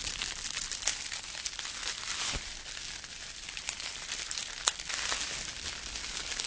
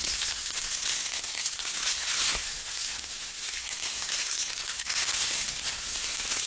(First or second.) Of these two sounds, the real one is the first